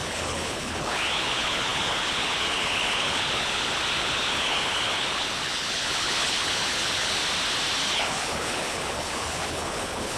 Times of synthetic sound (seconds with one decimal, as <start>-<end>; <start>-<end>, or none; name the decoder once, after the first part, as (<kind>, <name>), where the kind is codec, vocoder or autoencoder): 0.0-7.2 (codec, HILCodec); 7.8-10.2